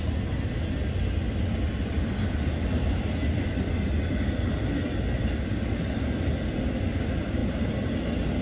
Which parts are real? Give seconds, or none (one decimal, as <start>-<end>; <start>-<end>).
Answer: 0.0-8.4